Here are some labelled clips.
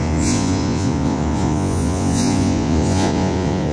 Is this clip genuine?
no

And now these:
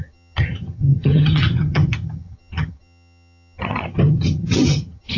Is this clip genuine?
no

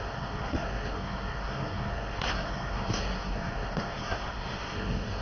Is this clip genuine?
no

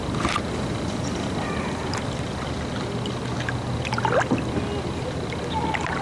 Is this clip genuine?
yes